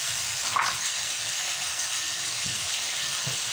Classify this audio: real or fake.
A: fake